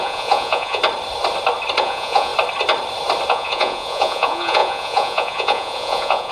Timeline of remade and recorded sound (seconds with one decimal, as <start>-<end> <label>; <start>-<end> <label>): 0.0-0.8 remade; 0.8-1.8 recorded; 1.8-2.3 remade; 2.3-3.3 recorded; 3.3-6.3 remade